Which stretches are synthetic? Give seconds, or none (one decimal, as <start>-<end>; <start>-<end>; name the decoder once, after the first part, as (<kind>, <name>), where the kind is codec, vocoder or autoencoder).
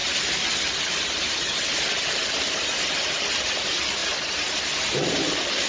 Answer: 3.4-4.0 (vocoder, BigVGAN v2); 4.5-5.7